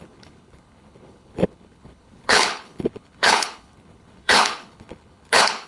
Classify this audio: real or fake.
fake